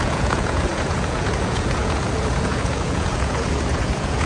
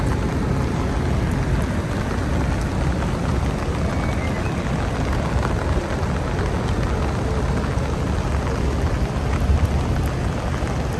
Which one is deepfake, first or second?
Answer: first